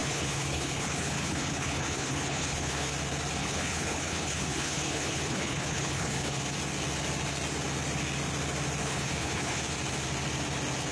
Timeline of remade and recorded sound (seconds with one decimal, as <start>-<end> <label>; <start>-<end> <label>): 0.0-2.9 remade; 2.9-3.4 recorded; 3.4-6.4 remade; 6.4-8.8 recorded; 8.8-9.6 remade; 9.6-10.9 recorded